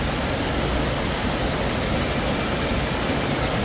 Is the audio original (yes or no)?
yes